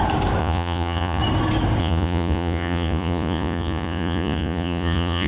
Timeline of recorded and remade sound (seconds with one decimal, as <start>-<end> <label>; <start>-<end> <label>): 0.0-0.4 recorded; 0.4-1.2 remade; 1.2-1.8 recorded; 1.8-5.3 remade